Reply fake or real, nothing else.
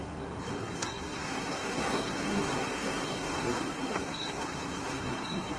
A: fake